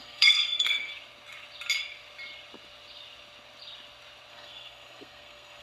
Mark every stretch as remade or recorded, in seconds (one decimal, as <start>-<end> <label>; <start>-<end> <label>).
0.0-0.9 remade; 0.9-4.3 recorded; 4.3-5.6 remade